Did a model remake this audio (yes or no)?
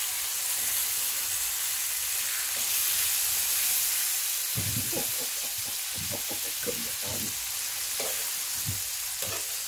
no